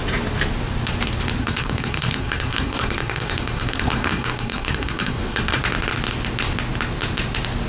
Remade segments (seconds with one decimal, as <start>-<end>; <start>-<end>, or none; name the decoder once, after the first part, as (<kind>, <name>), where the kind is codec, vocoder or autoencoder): 1.4-5.6 (codec, SNAC)